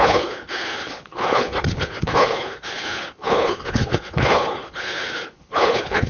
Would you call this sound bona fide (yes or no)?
no